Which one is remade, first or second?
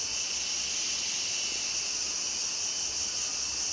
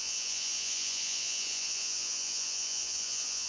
second